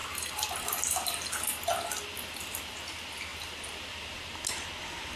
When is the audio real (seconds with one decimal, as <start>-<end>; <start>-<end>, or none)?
1.3-5.2